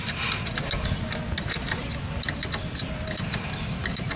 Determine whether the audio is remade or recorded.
recorded